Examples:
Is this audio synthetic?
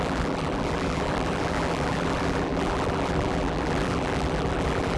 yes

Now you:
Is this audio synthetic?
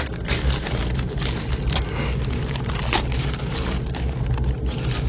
yes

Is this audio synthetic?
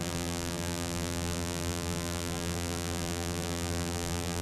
yes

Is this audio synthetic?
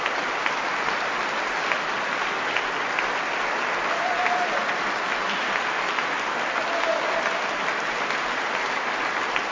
no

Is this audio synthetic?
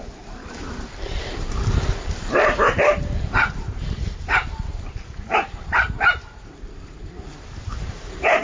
yes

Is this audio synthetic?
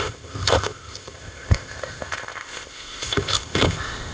yes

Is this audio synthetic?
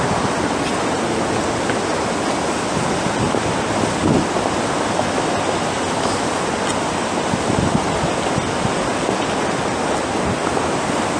no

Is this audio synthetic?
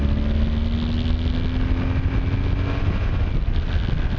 no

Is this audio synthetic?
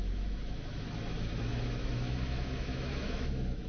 yes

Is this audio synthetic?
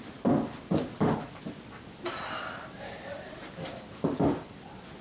no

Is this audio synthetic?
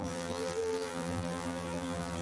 yes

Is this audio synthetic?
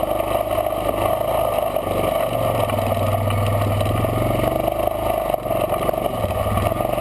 no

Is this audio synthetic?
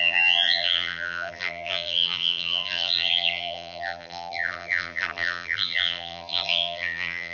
yes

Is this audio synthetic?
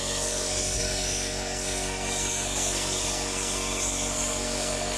yes